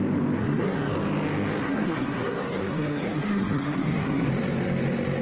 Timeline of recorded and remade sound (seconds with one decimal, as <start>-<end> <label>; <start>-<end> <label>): 0.0-0.4 recorded; 0.4-0.9 remade; 0.9-1.6 recorded; 1.6-4.3 remade; 4.3-5.2 recorded